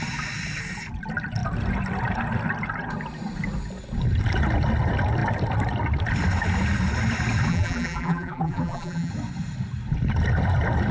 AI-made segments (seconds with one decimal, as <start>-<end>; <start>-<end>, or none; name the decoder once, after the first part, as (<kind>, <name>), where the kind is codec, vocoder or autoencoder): 7.5-9.1 (vocoder, BigVGAN v2)